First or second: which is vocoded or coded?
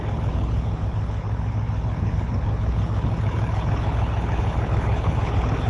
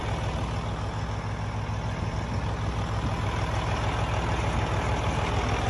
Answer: first